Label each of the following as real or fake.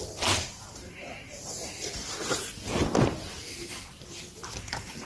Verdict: real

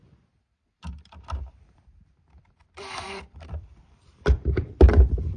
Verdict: fake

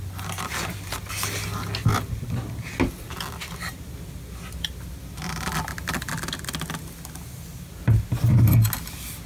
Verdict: real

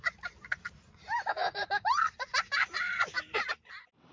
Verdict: fake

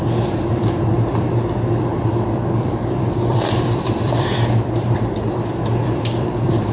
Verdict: fake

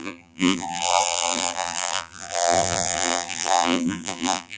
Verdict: fake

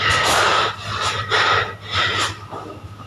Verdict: real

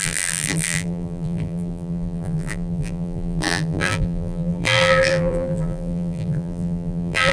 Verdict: fake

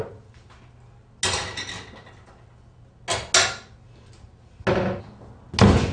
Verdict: real